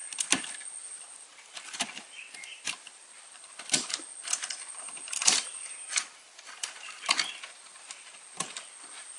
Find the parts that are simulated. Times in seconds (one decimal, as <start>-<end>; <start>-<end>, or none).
0.0-1.3; 2.5-3.1; 4.7-7.3